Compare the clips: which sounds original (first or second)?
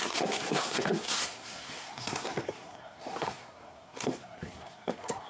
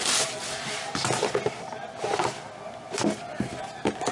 second